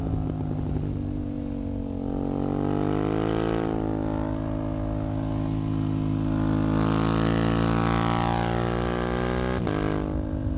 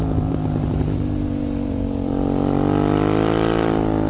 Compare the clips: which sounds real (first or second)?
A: first